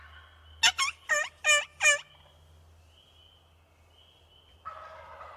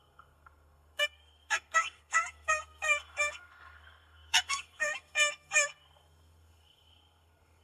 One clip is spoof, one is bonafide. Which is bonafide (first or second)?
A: first